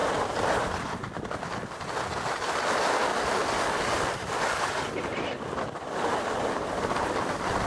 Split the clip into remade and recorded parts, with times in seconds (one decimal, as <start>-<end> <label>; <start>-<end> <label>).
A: 0.0-7.7 recorded